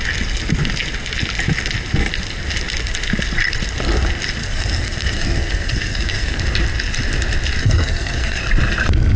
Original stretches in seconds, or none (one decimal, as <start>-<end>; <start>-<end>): 0.0-4.4; 6.4-7.6; 8.4-9.2